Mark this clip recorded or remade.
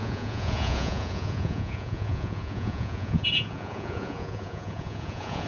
remade